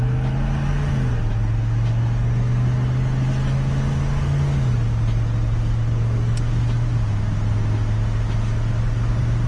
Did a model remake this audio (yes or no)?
no